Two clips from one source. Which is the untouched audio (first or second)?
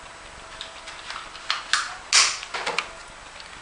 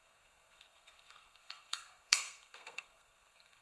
first